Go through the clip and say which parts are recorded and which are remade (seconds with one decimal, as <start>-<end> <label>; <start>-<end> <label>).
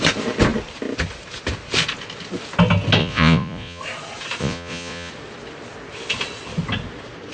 0.0-3.0 recorded; 3.0-3.8 remade; 3.8-4.4 recorded; 4.4-5.1 remade; 5.1-7.3 recorded